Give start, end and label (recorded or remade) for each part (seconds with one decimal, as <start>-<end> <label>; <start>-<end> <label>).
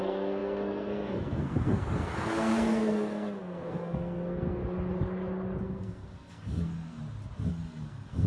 0.0-4.6 remade; 4.6-5.6 recorded; 5.6-7.0 remade; 7.0-7.5 recorded; 7.5-8.3 remade